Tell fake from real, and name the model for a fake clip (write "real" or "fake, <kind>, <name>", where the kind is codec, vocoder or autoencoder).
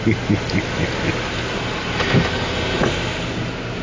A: real